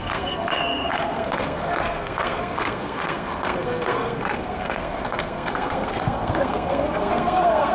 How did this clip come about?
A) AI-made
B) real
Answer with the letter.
A